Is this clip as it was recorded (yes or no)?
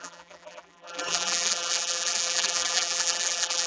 no